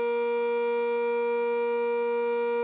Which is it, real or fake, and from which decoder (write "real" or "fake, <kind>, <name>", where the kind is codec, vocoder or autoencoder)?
real